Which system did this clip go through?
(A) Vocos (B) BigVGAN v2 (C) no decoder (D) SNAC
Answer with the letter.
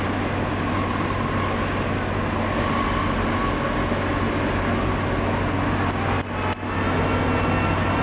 C